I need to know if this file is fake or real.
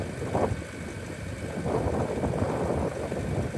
real